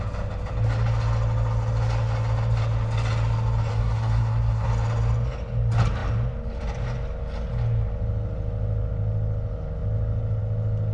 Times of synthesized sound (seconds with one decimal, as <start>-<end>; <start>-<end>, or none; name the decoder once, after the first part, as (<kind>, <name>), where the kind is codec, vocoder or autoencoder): 3.7-4.7 (codec, SNAC)